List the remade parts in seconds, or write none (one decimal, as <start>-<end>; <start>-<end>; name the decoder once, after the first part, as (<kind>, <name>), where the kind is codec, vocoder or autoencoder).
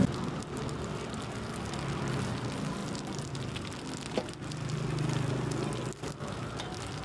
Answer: none